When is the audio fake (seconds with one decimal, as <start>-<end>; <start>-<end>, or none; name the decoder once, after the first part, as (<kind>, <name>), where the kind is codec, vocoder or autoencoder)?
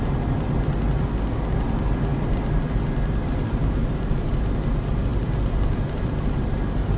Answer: none